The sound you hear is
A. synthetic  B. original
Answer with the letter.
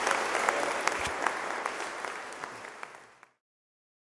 B